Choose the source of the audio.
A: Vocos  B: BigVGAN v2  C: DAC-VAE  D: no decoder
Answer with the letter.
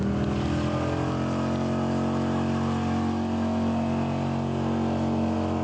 D